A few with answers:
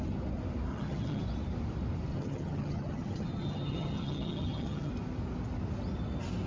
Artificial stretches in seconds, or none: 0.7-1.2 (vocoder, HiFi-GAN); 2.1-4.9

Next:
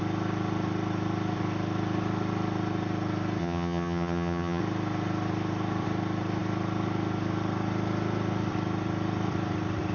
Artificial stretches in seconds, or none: 3.4-4.6 (vocoder, HiFi-GAN)

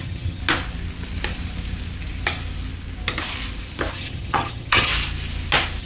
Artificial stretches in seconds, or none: 0.0-0.4 (vocoder, HiFi-GAN); 3.9-4.9

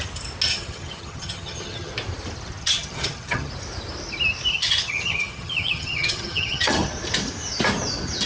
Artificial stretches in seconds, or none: 0.5-1.9 (vocoder, HiFi-GAN); 2.6-3.5; 4.5-6.9

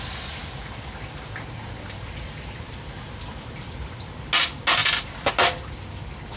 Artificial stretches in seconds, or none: none

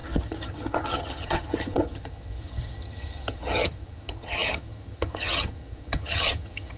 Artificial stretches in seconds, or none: 0.0-6.8 (vocoder, HiFi-GAN)